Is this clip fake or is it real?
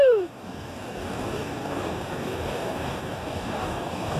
fake